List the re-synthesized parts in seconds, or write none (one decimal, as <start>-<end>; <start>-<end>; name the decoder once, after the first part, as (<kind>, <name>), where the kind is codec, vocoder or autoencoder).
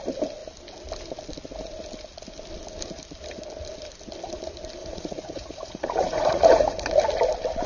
4.8-6.9 (vocoder, Vocos)